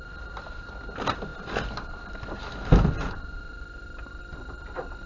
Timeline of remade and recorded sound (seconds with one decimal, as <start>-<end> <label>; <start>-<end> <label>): 0.0-5.1 recorded